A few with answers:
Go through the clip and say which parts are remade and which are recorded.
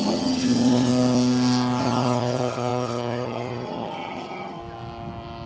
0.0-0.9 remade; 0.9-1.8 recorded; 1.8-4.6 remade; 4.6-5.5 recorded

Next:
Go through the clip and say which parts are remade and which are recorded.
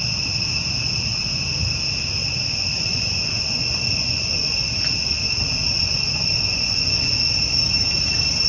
0.0-2.2 recorded; 2.2-7.3 remade; 7.3-8.5 recorded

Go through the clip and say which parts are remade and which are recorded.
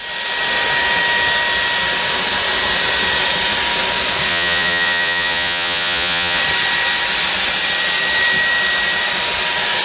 0.0-4.3 recorded; 4.3-6.4 remade; 6.4-9.8 recorded